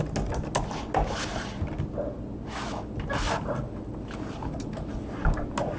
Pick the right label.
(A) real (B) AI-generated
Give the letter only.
A